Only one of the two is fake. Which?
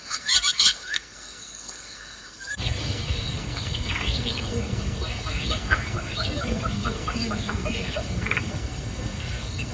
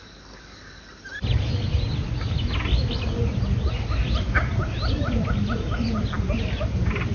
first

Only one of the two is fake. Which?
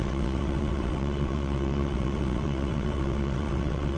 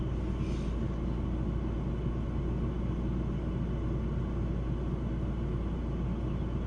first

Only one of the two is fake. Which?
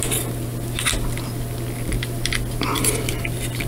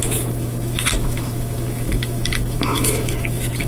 second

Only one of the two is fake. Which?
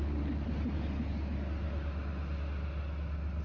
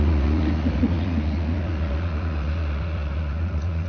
second